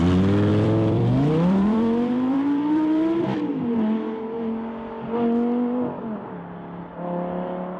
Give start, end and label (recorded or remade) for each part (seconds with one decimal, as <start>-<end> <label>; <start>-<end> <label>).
0.0-0.5 recorded; 0.5-3.5 remade; 3.5-7.8 recorded

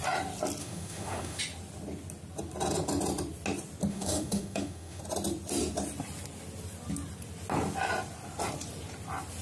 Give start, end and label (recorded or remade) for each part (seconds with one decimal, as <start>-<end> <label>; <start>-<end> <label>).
0.0-0.6 recorded; 0.6-1.4 remade; 1.4-3.9 recorded; 3.9-5.0 remade; 5.0-9.4 recorded

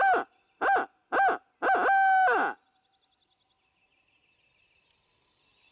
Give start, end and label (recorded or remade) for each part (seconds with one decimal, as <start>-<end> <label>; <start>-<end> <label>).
0.0-5.7 recorded